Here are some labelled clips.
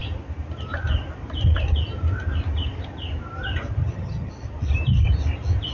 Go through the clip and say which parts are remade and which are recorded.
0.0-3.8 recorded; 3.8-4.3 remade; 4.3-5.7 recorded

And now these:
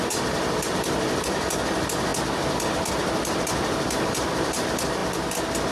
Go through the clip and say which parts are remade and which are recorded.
0.0-2.1 remade; 2.1-4.3 recorded; 4.3-5.0 remade; 5.0-5.7 recorded

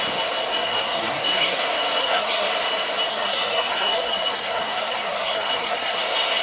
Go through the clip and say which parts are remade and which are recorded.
0.0-0.5 recorded; 0.5-1.6 remade; 1.6-2.0 recorded; 2.0-2.5 remade; 2.5-3.1 recorded; 3.1-6.0 remade; 6.0-6.4 recorded

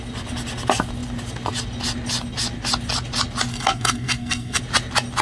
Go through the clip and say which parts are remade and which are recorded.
0.0-3.5 recorded; 3.5-4.6 remade; 4.6-5.2 recorded

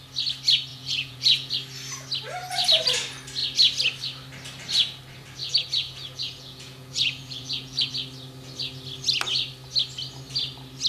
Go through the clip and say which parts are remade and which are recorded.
0.0-0.7 recorded; 0.7-1.5 remade; 1.5-5.4 recorded; 5.4-7.9 remade; 7.9-10.9 recorded

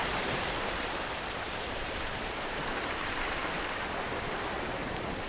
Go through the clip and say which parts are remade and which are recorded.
0.0-3.4 remade; 3.4-4.1 recorded; 4.1-5.3 remade

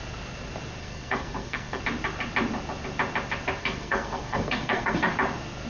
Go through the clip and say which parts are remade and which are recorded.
0.0-0.8 recorded; 0.8-1.8 remade; 1.8-3.6 recorded; 3.6-5.1 remade; 5.1-5.7 recorded